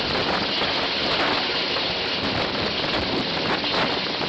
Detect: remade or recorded recorded